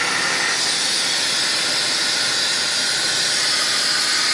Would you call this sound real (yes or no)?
yes